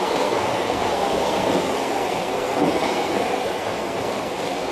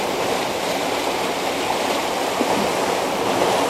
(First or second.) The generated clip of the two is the first